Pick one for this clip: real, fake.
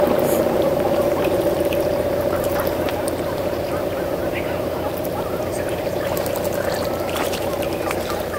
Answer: fake